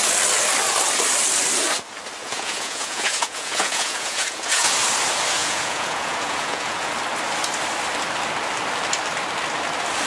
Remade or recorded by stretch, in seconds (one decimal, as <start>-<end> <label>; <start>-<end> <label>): 0.0-2.2 recorded; 2.2-4.7 remade; 4.7-5.4 recorded; 5.4-6.9 remade; 6.9-10.1 recorded